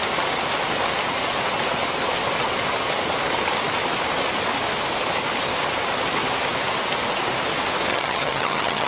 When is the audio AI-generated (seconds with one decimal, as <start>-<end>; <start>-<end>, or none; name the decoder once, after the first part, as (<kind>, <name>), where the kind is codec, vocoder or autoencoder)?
7.9-8.9 (vocoder, HiFi-GAN)